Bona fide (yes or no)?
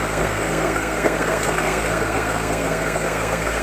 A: no